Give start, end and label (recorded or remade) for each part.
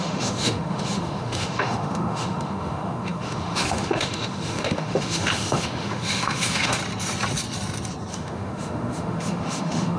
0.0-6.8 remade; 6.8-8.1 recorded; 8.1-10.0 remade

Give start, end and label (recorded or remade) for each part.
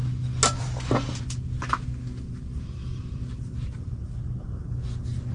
0.0-5.3 recorded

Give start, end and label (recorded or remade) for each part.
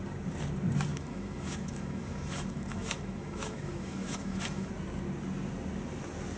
0.0-0.9 recorded; 0.9-4.7 remade; 4.7-6.4 recorded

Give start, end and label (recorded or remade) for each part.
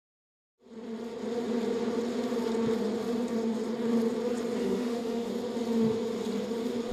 0.0-4.6 recorded; 4.6-5.3 remade; 5.3-6.9 recorded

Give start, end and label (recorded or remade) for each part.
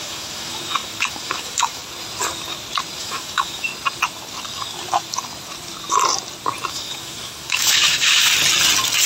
0.0-1.8 remade; 1.8-3.0 recorded; 3.0-3.7 remade; 3.7-6.7 recorded; 6.7-8.3 remade; 8.3-9.1 recorded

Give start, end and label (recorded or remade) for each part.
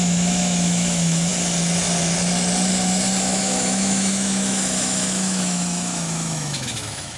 0.0-1.3 remade; 1.3-3.2 recorded; 3.2-7.2 remade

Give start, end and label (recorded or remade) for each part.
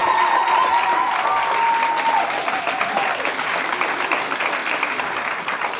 0.0-5.8 recorded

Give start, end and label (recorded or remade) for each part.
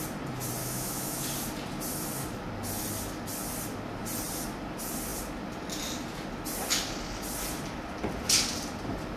0.0-0.6 recorded; 0.6-1.2 remade; 1.2-9.2 recorded